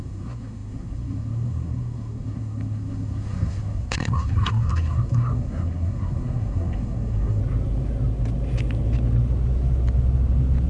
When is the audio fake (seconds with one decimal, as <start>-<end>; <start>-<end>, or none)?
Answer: 0.0-7.4